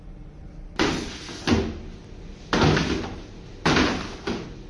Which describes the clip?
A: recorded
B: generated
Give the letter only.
A